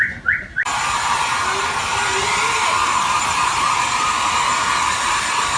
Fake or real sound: real